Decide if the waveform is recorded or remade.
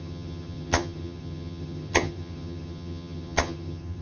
remade